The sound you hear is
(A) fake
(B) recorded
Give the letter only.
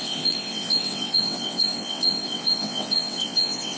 A